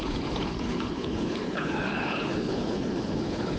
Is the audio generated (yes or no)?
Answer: yes